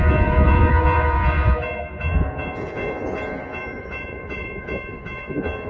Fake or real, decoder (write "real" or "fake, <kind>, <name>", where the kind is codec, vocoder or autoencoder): fake, vocoder, Vocos